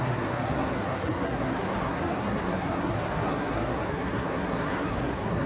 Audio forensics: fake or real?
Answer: fake